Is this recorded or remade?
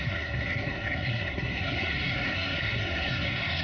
remade